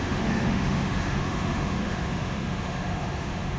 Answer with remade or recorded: remade